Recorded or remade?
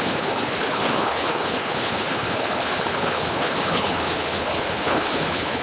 remade